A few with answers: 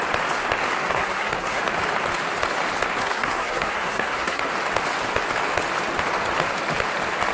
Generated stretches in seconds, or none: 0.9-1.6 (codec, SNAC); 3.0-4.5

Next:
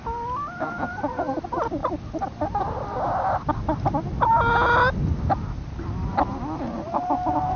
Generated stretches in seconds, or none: none

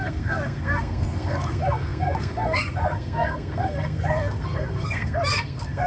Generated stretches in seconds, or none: 0.0-5.9 (codec, SNAC)

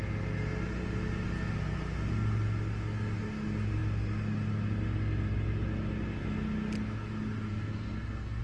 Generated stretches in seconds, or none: 7.5-8.4 (codec, SNAC)

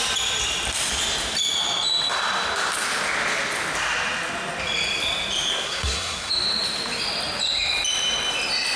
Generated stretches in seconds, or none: 5.5-6.3 (codec, SNAC)

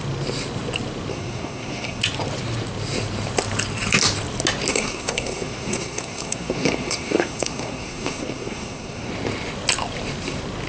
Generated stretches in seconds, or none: 1.1-2.0 (codec, SNAC); 4.7-9.1

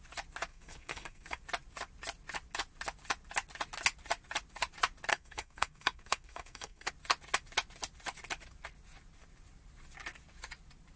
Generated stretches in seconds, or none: 0.5-1.4 (codec, SNAC); 5.1-6.9

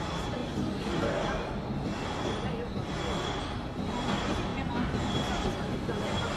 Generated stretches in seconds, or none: none